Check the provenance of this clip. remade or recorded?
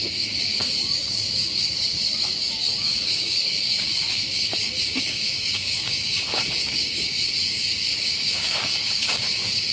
remade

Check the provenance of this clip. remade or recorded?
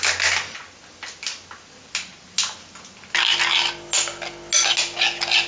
recorded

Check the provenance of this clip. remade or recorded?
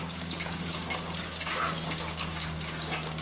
remade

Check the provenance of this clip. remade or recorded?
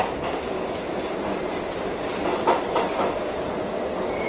recorded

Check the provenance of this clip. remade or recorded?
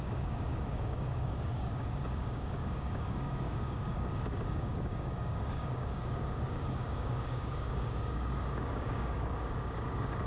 remade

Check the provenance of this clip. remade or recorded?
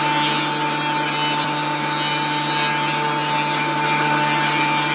recorded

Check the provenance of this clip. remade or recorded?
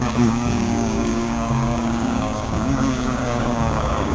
remade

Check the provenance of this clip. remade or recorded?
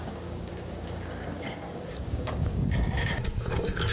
remade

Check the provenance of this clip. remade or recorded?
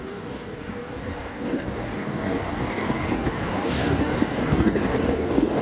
remade